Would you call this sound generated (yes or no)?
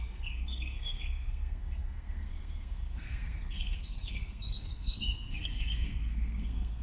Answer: yes